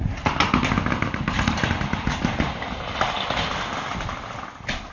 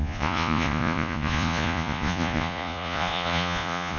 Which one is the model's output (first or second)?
second